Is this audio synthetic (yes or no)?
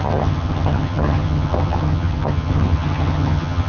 yes